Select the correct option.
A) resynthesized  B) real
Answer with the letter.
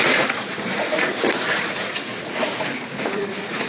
A